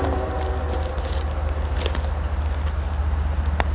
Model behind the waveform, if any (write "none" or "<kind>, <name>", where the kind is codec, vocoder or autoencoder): none